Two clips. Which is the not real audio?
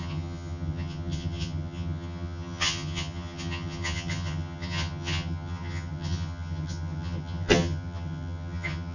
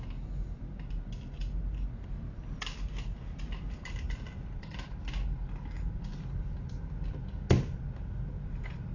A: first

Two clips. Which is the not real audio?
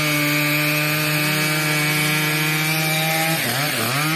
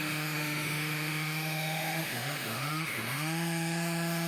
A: second